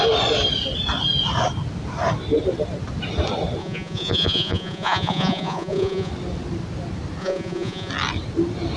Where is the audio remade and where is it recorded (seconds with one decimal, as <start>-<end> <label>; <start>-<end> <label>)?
0.0-3.6 recorded; 3.6-6.1 remade; 6.1-7.2 recorded; 7.2-7.9 remade; 7.9-8.8 recorded